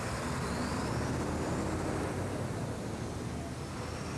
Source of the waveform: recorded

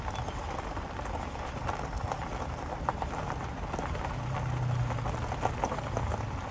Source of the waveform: recorded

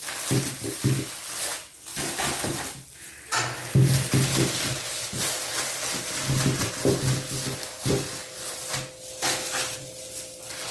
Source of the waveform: recorded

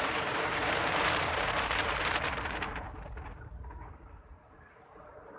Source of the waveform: remade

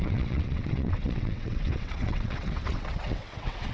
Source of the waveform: remade